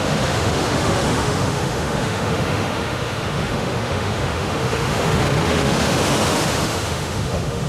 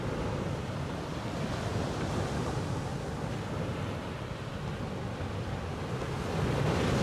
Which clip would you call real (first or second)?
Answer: second